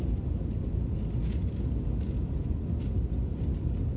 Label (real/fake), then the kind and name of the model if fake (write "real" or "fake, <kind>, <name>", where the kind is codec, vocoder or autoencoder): real